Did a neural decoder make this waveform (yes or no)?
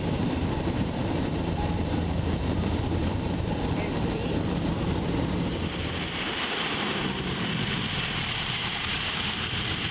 yes